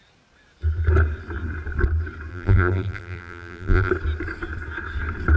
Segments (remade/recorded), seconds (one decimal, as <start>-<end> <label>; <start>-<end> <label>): 0.0-2.3 recorded; 2.3-3.9 remade; 3.9-5.4 recorded